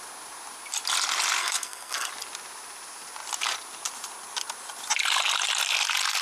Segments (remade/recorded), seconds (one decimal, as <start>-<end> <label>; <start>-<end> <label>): 0.0-1.4 recorded; 1.4-2.1 remade; 2.1-6.2 recorded